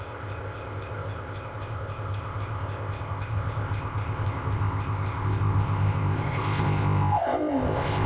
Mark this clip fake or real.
fake